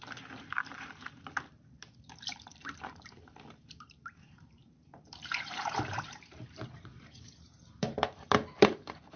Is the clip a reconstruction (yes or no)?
yes